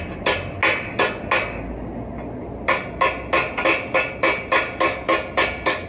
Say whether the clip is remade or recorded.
recorded